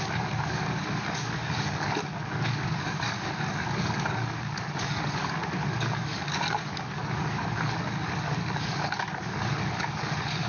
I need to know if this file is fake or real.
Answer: fake